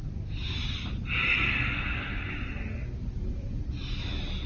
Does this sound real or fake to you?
real